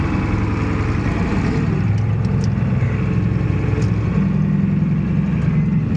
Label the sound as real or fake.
real